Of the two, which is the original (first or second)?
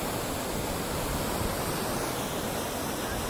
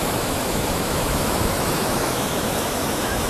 first